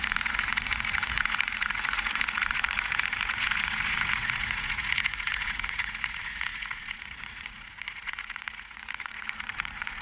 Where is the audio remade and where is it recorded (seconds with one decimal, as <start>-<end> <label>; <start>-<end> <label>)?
0.0-10.0 remade